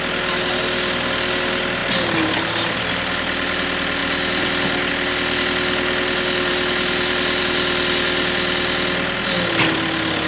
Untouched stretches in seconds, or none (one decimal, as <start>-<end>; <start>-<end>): 0.0-10.3